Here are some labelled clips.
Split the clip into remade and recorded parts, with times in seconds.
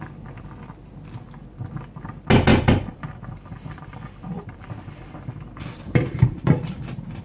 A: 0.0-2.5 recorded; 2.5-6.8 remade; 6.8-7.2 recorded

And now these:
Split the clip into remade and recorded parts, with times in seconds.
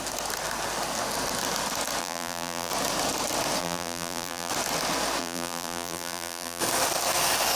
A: 0.0-2.0 recorded; 2.0-2.7 remade; 2.7-3.6 recorded; 3.6-4.5 remade; 4.5-5.2 recorded; 5.2-6.6 remade; 6.6-7.6 recorded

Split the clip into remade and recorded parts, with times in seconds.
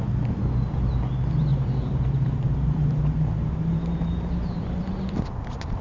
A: 0.0-1.5 recorded; 1.5-5.0 remade; 5.0-5.8 recorded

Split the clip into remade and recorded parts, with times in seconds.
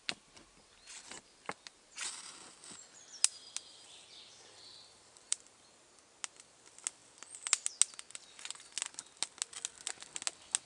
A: 0.0-4.7 recorded; 4.7-5.9 remade; 5.9-10.7 recorded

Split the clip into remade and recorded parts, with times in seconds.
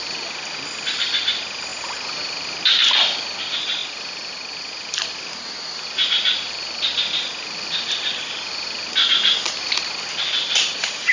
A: 0.0-1.7 remade; 1.7-2.6 recorded; 2.6-11.1 remade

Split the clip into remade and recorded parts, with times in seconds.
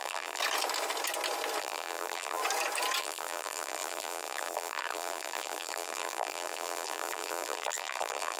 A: 0.0-0.4 remade; 0.4-1.6 recorded; 1.6-2.4 remade; 2.4-3.0 recorded; 3.0-8.4 remade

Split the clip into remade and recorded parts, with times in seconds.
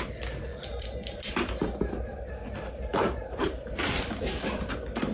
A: 0.0-0.5 recorded; 0.5-2.3 remade; 2.3-2.9 recorded; 2.9-3.9 remade; 3.9-5.1 recorded